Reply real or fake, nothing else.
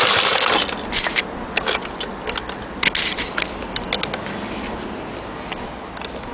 real